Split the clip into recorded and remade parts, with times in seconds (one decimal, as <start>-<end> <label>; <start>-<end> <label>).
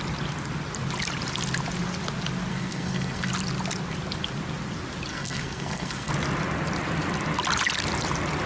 0.0-2.5 recorded; 2.5-3.3 remade; 3.3-5.1 recorded; 5.1-6.1 remade; 6.1-8.5 recorded